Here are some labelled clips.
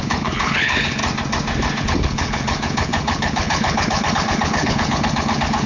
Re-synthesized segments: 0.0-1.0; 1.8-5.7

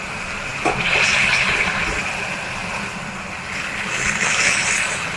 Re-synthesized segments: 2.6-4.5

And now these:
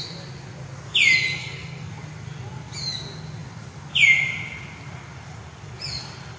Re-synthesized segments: 1.4-1.9